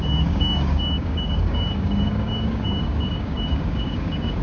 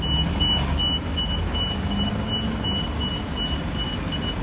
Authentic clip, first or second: second